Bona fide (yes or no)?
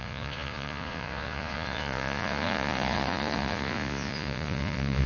no